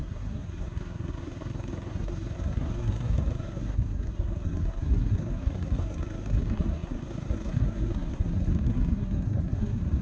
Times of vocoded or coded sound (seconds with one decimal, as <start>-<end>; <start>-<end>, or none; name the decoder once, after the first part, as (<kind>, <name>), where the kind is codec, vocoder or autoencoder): 0.0-10.0 (codec, SNAC)